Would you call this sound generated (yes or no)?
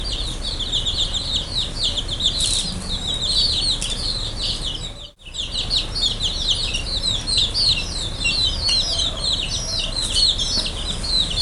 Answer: no